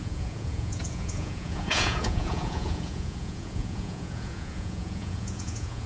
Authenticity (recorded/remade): remade